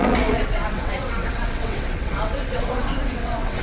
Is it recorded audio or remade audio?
remade